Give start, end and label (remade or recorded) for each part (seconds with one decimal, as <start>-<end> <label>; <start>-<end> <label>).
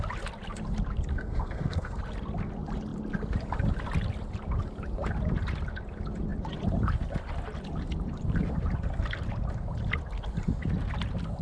0.0-1.1 recorded; 1.1-2.0 remade; 2.0-11.4 recorded